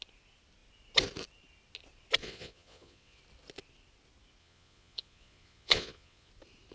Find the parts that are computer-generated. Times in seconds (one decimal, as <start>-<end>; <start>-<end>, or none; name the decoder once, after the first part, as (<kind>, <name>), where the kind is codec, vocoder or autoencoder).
2.2-3.2 (vocoder, Vocos); 4.4-6.3